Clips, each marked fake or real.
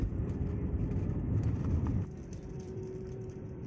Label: fake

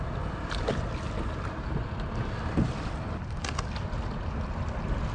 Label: real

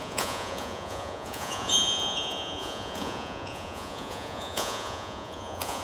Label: fake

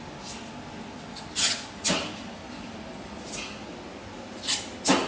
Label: real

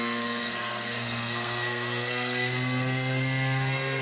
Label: fake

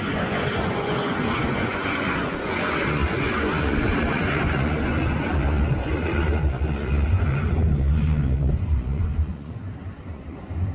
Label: fake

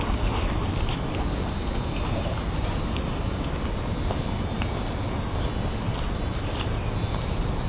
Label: real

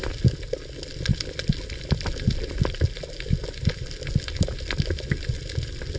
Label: real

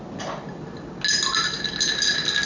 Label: real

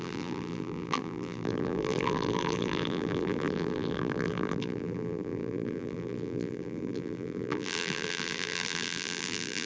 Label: fake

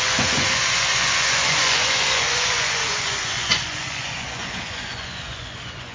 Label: fake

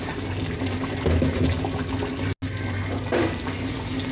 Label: real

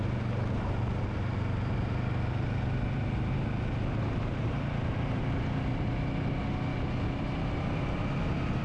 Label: real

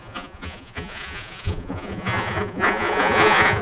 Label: fake